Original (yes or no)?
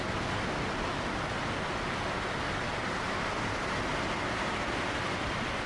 yes